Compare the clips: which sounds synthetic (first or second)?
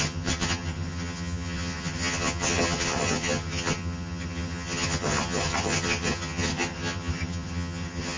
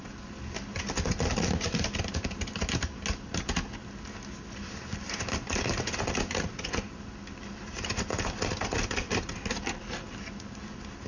first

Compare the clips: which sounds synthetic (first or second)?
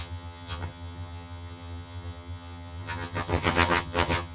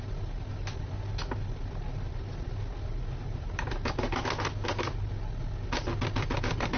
first